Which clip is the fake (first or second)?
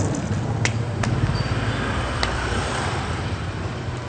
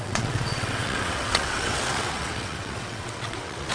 second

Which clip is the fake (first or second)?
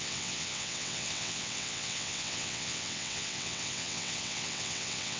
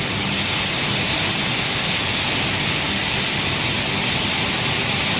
first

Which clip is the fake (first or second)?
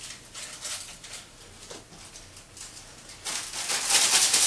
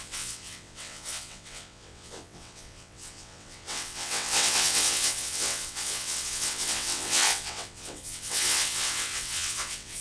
second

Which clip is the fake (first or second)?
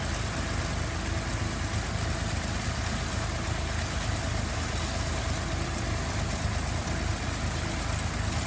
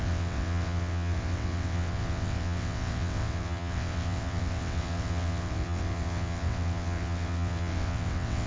second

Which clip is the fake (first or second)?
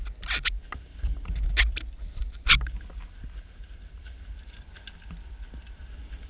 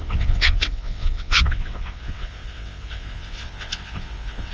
second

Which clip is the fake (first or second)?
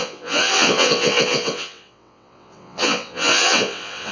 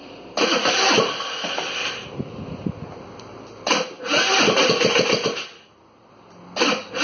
first